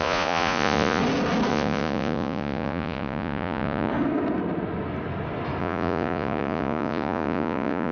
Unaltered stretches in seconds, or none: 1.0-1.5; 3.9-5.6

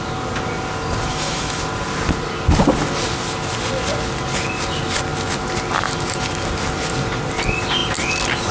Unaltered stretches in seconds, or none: 0.0-1.1; 1.6-8.5

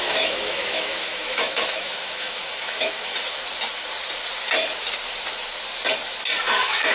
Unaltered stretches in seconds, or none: 3.1-6.4

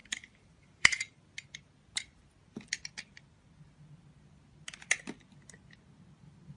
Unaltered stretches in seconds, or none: 1.2-6.6

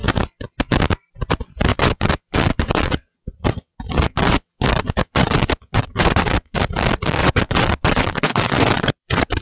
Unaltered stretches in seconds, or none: 0.0-1.7; 6.6-7.2

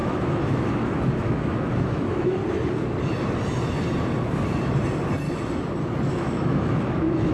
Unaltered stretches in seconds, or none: 2.4-6.1

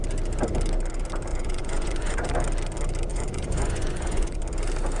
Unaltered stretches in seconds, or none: 0.0-1.3; 2.3-3.1; 4.4-5.0